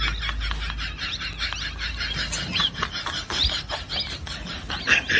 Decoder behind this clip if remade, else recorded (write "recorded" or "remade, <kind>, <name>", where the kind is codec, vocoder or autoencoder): recorded